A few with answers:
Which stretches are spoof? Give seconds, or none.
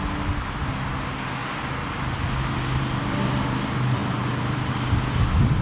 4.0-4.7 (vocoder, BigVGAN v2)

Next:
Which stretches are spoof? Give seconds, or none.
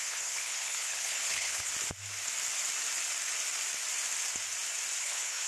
0.0-1.7 (codec, HILCodec); 5.0-5.5